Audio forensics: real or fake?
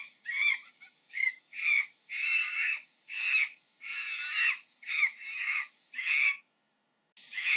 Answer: fake